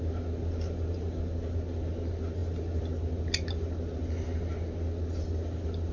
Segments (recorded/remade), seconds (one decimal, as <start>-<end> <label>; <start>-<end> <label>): 0.0-5.9 recorded